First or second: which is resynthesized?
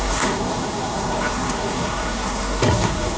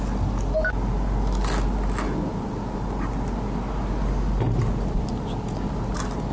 first